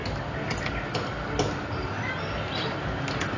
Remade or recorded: recorded